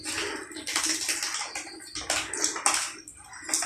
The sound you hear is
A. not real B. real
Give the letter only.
B